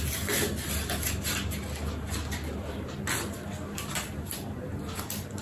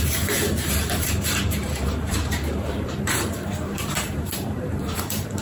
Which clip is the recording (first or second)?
first